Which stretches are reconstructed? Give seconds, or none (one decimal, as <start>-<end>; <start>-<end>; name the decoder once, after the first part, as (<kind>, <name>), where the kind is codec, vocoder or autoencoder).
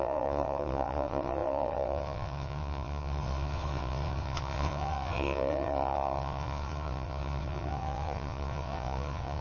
0.0-9.4 (vocoder, WaveNeXt)